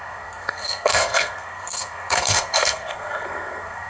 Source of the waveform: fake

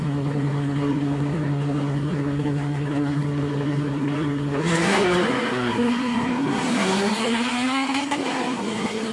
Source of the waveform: fake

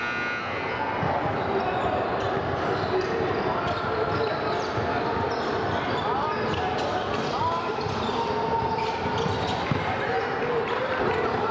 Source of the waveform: real